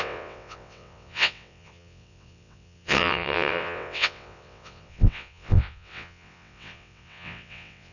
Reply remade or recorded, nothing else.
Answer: remade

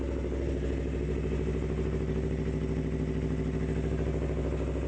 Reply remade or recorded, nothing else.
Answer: recorded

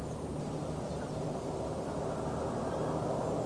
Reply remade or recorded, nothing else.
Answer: recorded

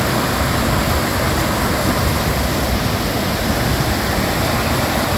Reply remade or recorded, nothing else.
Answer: recorded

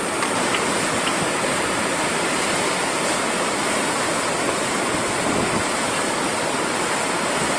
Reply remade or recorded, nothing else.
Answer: recorded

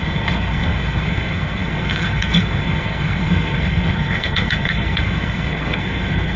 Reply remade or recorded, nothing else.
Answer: remade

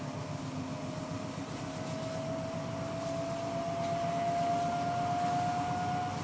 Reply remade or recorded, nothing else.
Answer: recorded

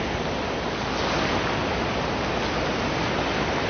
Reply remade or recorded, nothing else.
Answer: recorded